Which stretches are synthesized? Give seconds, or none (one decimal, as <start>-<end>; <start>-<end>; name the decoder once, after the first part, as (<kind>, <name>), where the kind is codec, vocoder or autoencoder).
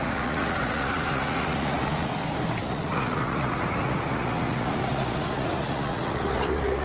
0.0-2.1 (vocoder, Vocos); 2.6-6.8